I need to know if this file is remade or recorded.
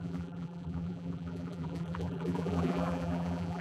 remade